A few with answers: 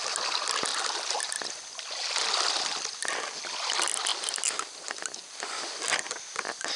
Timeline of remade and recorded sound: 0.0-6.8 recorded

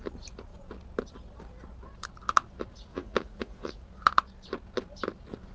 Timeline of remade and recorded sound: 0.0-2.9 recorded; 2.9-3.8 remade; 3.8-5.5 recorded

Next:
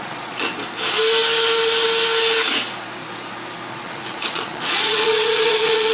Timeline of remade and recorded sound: 0.0-0.5 remade; 0.5-3.7 recorded; 3.7-5.9 remade

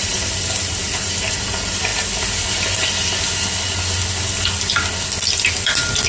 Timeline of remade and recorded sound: 0.0-6.1 recorded